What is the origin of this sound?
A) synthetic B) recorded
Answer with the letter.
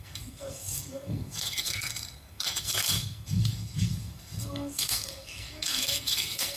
A